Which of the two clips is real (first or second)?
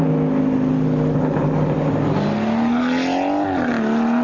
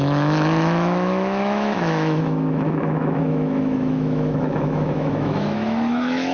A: first